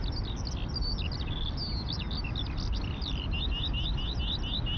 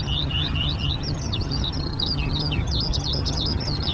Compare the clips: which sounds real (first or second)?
first